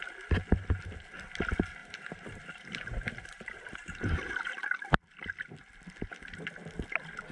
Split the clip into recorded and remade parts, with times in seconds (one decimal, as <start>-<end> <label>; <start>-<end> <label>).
0.0-1.8 recorded; 1.8-5.0 remade; 5.0-7.3 recorded